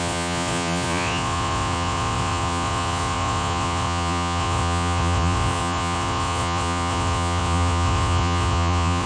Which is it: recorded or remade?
remade